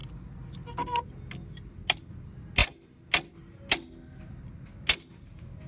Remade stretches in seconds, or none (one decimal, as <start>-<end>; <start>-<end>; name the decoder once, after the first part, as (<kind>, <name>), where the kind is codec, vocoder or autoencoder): none